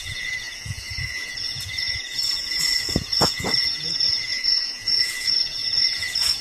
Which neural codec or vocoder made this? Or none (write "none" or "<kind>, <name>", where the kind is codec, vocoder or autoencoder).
vocoder, Vocos